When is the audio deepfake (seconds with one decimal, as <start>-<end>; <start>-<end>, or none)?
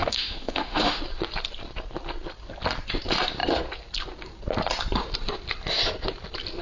0.0-1.0